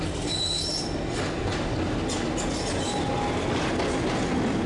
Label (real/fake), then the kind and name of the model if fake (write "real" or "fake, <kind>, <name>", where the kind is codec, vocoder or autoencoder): real